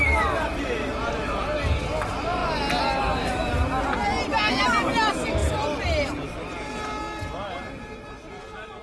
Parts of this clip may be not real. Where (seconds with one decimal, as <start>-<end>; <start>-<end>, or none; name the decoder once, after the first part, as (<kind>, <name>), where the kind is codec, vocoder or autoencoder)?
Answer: none